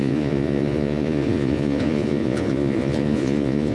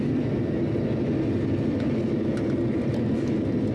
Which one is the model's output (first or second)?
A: first